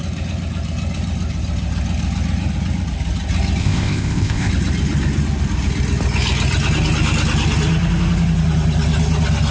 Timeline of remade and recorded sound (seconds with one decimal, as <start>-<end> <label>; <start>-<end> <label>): 0.0-3.6 recorded; 3.6-4.5 remade; 4.5-9.5 recorded